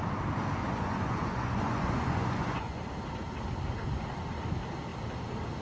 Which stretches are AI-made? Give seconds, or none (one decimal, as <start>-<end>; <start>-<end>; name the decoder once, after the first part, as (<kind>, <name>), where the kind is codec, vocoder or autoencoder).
0.6-2.8 (vocoder, Vocos)